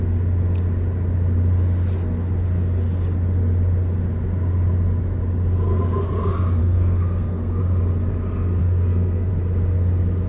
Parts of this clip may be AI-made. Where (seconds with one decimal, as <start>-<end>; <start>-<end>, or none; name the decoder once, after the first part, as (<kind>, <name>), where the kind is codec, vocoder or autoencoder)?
6.6-7.6 (codec, SNAC); 8.6-9.3